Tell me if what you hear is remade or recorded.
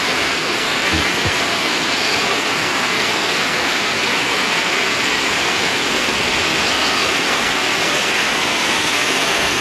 remade